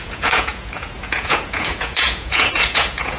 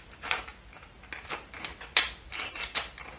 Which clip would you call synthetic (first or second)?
first